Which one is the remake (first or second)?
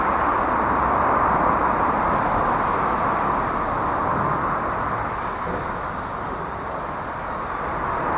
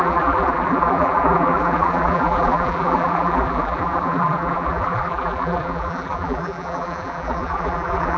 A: second